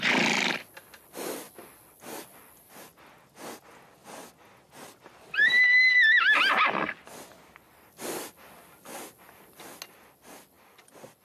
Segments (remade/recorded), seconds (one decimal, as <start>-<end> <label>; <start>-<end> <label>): 0.0-5.4 recorded; 5.4-5.9 remade; 5.9-11.2 recorded